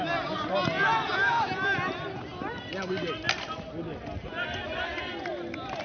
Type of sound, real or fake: real